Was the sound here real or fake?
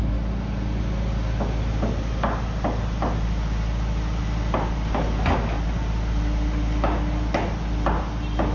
real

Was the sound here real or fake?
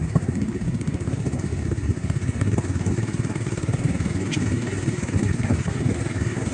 fake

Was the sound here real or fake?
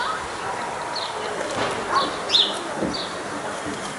real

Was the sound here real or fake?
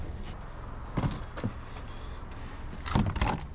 real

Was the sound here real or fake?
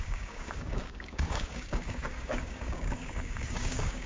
fake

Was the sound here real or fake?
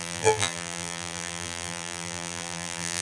fake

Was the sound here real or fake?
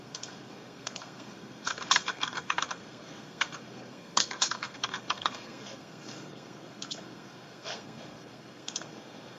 fake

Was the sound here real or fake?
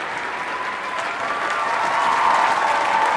real